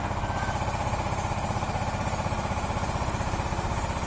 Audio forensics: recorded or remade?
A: recorded